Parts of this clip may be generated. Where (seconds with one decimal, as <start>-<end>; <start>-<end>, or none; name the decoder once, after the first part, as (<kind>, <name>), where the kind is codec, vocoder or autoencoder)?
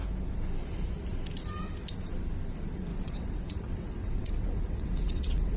2.9-5.6 (vocoder, WaveNeXt)